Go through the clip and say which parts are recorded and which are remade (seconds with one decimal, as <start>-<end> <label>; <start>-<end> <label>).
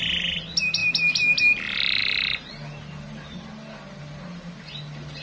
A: 0.0-5.2 recorded